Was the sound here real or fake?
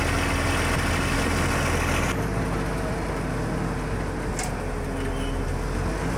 real